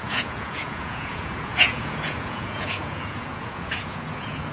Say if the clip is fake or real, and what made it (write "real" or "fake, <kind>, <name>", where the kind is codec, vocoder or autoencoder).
fake, vocoder, Vocos